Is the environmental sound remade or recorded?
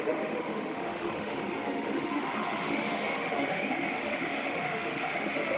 remade